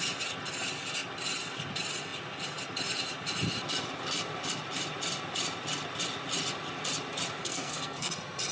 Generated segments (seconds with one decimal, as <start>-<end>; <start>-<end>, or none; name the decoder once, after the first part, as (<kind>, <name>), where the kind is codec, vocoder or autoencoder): 7.4-8.1 (codec, SNAC)